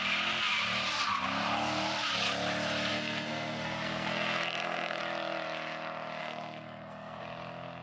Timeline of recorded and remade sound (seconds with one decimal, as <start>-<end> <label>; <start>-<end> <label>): 0.0-2.9 recorded; 2.9-5.0 remade; 5.0-6.2 recorded; 6.2-7.2 remade; 7.2-7.8 recorded